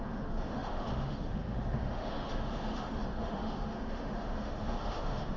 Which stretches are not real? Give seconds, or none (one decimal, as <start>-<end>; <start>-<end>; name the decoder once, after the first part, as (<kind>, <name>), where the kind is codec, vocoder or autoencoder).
0.0-5.4 (autoencoder, DAC-VAE)